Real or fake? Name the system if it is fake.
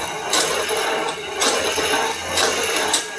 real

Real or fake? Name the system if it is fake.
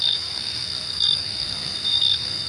fake, codec, SNAC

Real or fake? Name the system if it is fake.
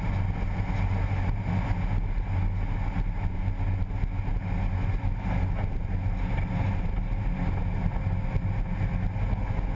real